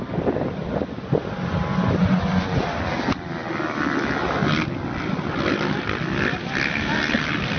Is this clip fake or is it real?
real